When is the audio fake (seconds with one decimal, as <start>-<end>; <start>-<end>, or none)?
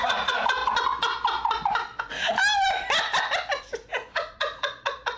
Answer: 0.0-0.6; 2.0-2.4; 3.6-5.2